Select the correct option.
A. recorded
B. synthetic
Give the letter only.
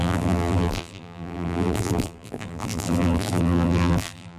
B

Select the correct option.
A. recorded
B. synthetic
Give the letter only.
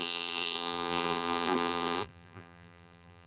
B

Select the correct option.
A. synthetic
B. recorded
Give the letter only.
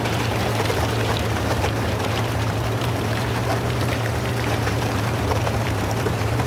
A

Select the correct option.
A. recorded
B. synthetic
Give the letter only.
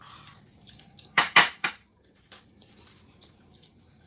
B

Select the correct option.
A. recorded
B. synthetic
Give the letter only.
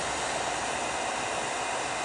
A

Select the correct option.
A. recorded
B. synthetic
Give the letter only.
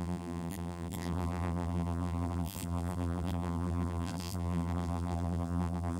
B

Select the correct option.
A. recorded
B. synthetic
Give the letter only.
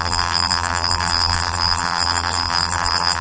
B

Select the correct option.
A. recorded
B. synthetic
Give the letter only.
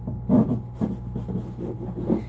A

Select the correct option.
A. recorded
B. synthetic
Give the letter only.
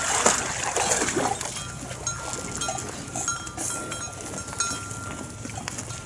A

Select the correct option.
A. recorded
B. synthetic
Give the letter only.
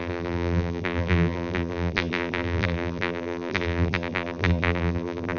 B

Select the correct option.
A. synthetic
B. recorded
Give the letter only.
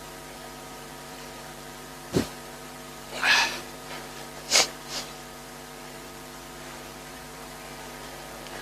A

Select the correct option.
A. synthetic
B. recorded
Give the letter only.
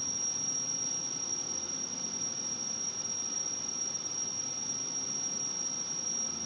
B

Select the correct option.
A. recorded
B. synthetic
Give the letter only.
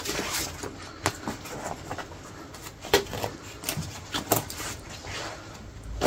A